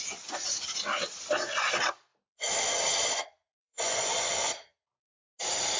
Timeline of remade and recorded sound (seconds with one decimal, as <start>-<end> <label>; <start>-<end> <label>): 0.0-3.6 recorded; 3.6-4.5 remade; 4.5-5.8 recorded